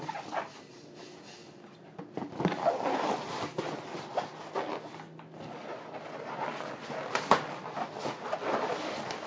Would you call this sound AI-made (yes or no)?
no